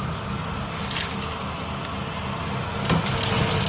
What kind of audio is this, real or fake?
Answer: real